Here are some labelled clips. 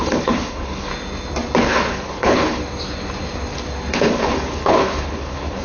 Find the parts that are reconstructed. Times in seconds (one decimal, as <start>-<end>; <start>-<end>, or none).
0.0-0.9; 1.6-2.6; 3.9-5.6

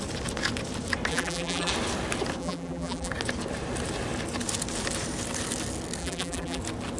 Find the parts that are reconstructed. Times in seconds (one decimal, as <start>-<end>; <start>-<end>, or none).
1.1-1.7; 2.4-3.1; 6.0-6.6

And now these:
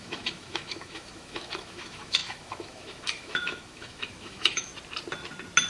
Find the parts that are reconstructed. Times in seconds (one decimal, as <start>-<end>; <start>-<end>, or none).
0.0-4.7